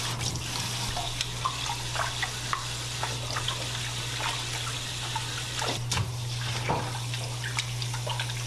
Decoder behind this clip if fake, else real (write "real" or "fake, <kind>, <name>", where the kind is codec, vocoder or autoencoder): real